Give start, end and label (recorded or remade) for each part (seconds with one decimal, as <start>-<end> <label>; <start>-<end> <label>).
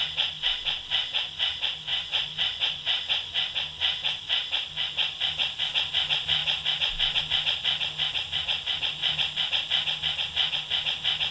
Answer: 0.0-1.9 recorded; 1.9-3.5 remade; 3.5-11.3 recorded